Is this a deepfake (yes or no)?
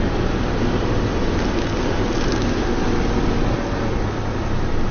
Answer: no